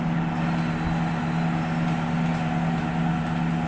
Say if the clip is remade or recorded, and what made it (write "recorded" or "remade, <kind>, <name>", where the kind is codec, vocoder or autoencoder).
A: recorded